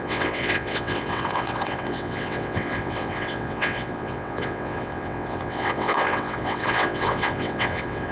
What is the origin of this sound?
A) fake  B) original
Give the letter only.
A